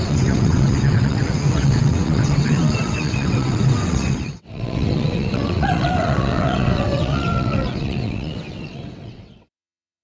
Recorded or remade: remade